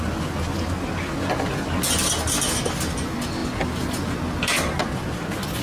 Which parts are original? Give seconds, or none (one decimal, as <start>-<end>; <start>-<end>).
0.0-5.6